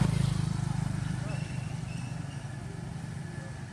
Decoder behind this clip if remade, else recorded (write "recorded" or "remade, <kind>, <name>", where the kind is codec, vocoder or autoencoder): recorded